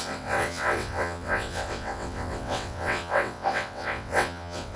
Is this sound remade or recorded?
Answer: remade